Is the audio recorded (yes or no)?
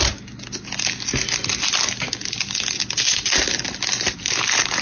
yes